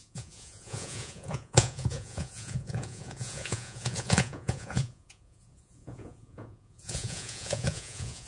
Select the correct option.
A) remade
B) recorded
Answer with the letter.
A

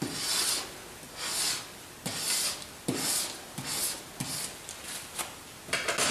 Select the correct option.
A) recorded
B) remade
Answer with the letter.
A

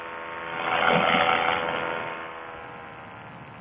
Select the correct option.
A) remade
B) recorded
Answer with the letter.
B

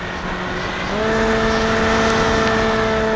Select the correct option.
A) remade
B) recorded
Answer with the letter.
B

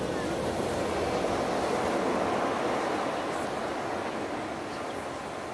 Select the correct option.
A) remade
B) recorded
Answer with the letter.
B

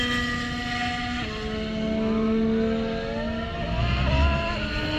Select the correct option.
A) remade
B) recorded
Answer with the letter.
B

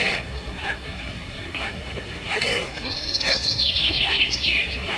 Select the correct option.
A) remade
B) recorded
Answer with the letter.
A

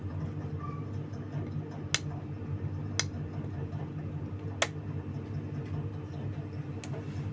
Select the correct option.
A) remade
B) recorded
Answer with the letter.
B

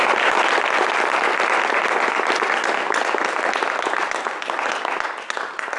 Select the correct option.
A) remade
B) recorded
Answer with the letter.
B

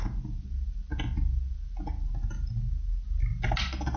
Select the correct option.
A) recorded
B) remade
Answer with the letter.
A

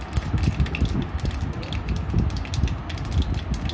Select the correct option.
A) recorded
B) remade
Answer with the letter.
A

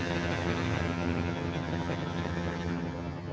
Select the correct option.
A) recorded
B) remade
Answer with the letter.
B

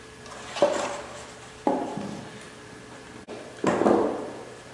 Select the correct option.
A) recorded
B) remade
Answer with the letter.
B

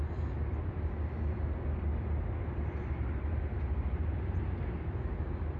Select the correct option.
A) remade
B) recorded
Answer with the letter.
B